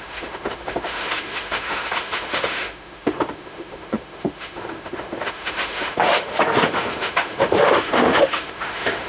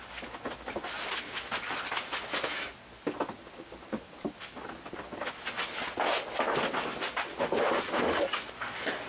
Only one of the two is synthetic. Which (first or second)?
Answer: first